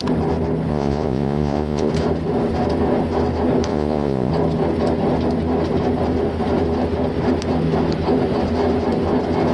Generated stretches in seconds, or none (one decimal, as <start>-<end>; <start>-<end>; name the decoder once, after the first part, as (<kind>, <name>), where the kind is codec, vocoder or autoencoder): 0.7-1.9 (vocoder, Vocos); 3.7-4.3